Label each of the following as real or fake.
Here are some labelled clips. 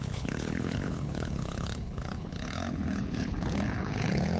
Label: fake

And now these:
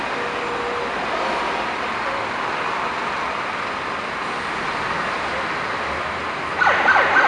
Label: real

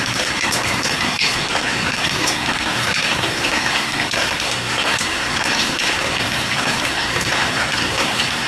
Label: fake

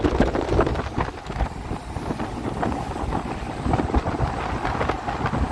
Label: real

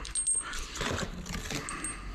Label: real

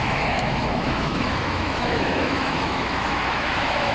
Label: fake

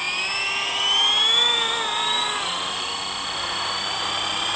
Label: real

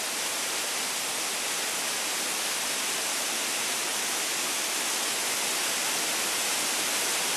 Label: real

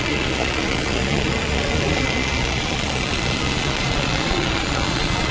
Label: fake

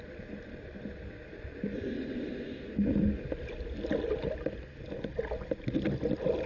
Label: real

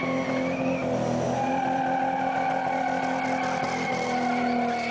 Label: real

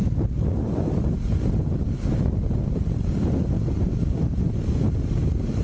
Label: real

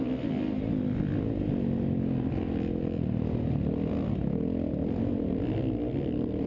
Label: real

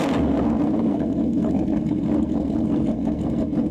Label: fake